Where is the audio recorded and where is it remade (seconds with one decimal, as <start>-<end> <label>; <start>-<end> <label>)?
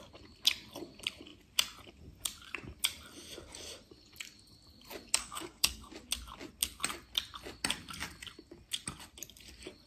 0.0-5.2 recorded; 5.2-5.9 remade; 5.9-9.9 recorded